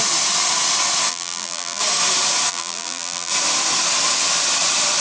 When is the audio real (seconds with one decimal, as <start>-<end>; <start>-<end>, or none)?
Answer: 0.0-1.1; 1.8-2.5; 3.3-5.0